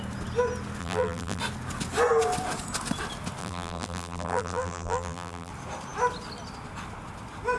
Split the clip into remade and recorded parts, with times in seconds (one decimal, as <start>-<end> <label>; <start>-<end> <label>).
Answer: 0.0-0.8 recorded; 0.8-1.4 remade; 1.4-3.4 recorded; 3.4-5.5 remade; 5.5-7.6 recorded